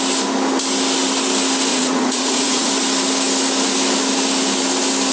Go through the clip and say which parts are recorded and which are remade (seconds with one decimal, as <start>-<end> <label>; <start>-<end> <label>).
0.0-1.7 recorded; 1.7-2.7 remade; 2.7-5.1 recorded